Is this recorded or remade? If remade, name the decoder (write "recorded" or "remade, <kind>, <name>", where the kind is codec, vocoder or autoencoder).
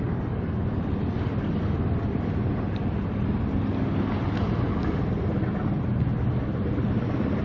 recorded